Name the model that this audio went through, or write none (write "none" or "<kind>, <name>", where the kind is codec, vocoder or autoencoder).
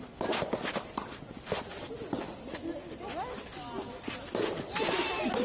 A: none